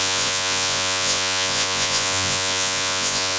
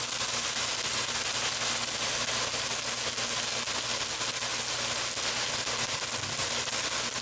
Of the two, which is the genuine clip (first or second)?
second